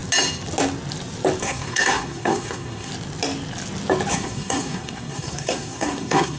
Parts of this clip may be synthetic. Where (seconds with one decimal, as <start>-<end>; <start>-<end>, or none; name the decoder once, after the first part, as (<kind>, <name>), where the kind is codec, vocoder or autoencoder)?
1.4-2.9 (codec, SNAC); 4.1-6.4